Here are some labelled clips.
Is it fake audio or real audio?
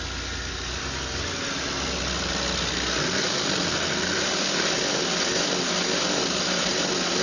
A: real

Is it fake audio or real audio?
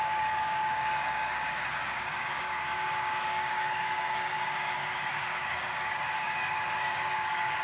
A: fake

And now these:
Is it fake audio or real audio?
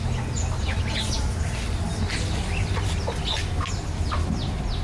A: real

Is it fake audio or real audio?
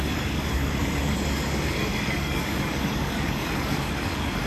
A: fake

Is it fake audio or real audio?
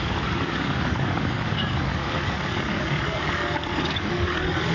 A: fake